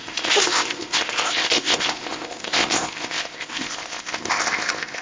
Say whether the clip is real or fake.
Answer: fake